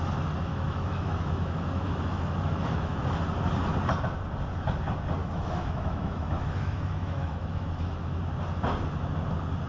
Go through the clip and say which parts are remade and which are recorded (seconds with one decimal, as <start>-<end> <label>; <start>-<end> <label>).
0.0-0.5 recorded; 0.5-3.0 remade; 3.0-5.2 recorded; 5.2-8.2 remade; 8.2-9.7 recorded